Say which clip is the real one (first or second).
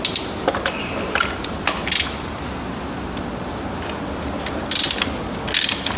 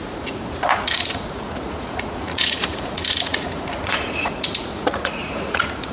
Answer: first